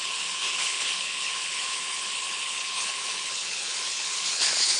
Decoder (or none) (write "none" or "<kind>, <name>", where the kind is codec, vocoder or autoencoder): codec, HILCodec